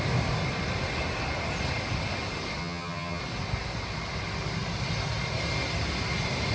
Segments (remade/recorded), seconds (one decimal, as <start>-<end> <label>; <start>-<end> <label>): 0.0-2.6 recorded; 2.6-3.2 remade; 3.2-6.5 recorded